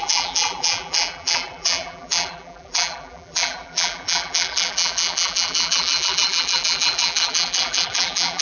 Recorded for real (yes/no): no